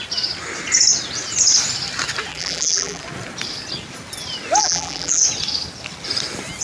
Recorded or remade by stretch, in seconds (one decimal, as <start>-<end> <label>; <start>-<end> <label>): 0.0-2.3 recorded; 2.3-3.0 remade; 3.0-4.6 recorded; 4.6-5.2 remade; 5.2-6.6 recorded